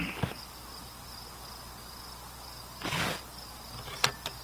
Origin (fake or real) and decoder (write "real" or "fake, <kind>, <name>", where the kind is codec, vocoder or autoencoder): real